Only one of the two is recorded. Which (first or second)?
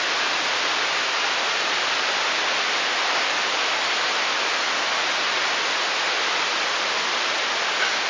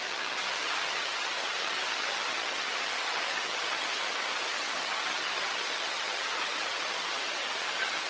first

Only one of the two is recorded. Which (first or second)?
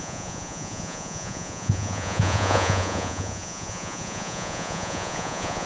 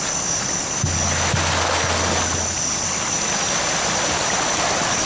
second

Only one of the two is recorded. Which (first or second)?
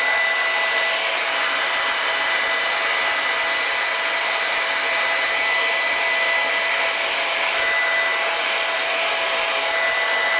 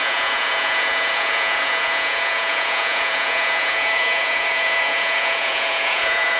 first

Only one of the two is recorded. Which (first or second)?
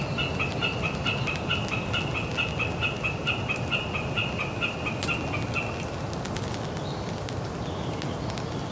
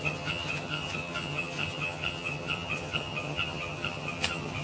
first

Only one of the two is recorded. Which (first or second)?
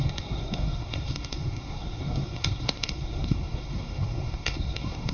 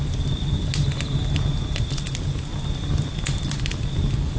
second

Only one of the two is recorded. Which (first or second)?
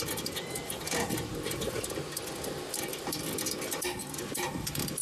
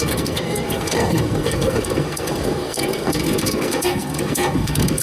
first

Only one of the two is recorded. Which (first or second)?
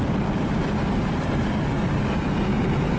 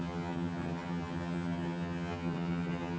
first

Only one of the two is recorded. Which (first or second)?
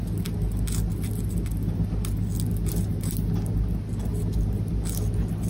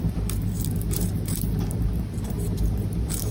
first